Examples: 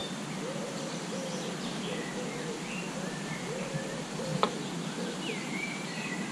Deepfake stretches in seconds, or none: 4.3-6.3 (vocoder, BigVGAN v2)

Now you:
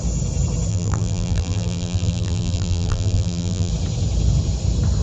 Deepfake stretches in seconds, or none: 0.7-3.7 (vocoder, BigVGAN v2)

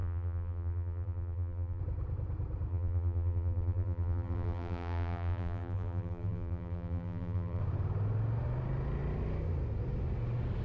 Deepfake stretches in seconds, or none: 0.0-1.8 (vocoder, BigVGAN v2); 2.7-7.6

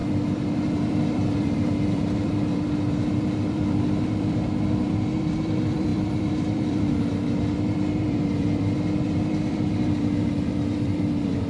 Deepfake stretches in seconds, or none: 0.0-11.5 (vocoder, BigVGAN v2)

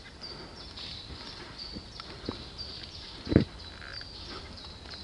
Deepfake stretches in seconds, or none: none

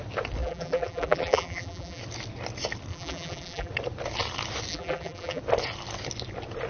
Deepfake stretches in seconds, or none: 0.4-2.0 (vocoder, BigVGAN v2); 2.9-3.7; 4.7-5.4